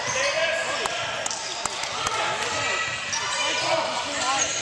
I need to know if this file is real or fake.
real